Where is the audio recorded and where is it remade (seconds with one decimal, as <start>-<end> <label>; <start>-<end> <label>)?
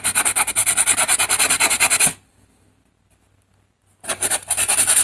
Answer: 0.0-5.0 recorded